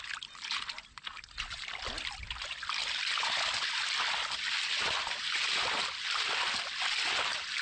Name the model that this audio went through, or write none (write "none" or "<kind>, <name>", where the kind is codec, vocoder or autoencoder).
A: none